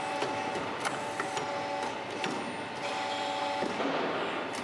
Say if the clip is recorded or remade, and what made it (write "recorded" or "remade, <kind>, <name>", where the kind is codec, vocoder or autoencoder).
recorded